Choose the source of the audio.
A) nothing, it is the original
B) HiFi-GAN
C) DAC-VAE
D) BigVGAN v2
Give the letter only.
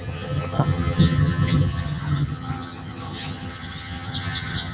B